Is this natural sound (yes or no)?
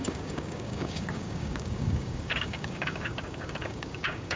no